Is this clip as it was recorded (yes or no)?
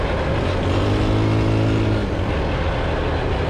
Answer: yes